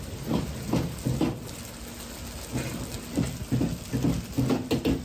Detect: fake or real real